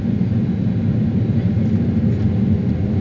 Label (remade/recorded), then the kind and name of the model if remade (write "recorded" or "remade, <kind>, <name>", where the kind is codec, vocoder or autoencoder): recorded